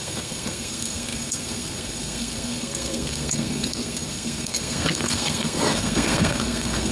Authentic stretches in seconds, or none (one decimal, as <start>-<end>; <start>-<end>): none